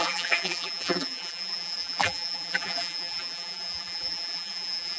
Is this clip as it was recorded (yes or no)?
no